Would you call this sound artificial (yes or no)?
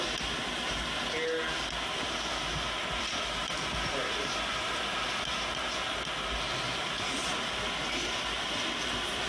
no